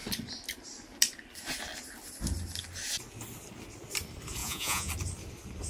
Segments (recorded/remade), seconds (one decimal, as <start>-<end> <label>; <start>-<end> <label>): 0.0-4.4 recorded; 4.4-4.9 remade; 4.9-5.7 recorded